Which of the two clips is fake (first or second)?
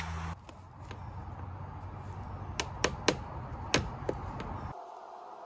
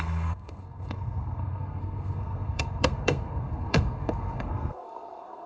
second